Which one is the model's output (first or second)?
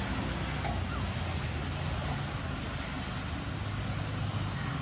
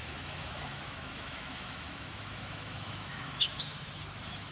second